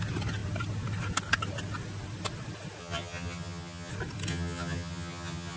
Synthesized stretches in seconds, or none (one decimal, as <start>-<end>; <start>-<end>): 2.8-3.9; 4.3-5.6